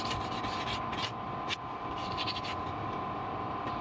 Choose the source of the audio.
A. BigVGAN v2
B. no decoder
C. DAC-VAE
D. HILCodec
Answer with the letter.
B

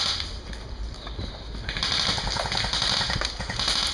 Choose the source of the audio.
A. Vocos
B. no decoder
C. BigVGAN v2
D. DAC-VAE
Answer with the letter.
B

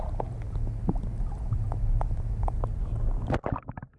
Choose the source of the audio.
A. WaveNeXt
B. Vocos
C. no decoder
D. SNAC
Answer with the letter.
C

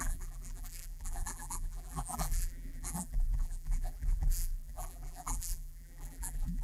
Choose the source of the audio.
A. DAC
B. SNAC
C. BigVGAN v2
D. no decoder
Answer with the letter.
C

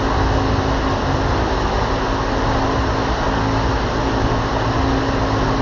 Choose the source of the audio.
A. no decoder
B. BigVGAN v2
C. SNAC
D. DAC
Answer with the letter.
A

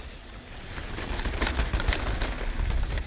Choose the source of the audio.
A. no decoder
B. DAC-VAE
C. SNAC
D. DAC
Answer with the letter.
A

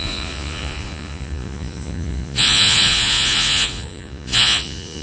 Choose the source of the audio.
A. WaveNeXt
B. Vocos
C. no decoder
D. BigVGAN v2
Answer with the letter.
B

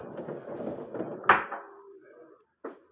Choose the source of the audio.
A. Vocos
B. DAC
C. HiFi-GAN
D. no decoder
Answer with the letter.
D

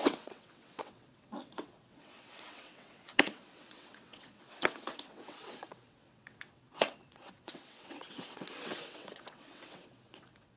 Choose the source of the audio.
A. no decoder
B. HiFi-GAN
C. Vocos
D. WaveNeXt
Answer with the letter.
D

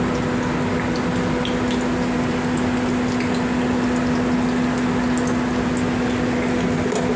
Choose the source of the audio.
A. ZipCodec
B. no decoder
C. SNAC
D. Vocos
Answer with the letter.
B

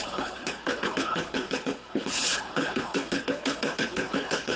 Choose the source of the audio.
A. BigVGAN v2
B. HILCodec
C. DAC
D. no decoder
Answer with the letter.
B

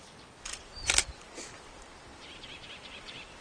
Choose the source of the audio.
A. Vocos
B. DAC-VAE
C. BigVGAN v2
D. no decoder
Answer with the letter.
C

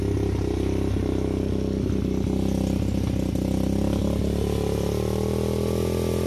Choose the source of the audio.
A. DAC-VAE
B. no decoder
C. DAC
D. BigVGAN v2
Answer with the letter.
B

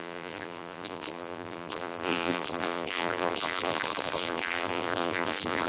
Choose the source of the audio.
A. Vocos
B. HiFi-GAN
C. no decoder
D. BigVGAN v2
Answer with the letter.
D